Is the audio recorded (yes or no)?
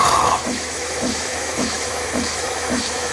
no